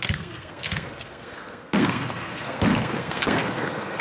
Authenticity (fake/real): fake